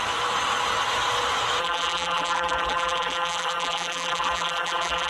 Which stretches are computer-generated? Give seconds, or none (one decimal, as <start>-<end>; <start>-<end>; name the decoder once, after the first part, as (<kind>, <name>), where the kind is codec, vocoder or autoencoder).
1.6-5.1 (vocoder, BigVGAN v2)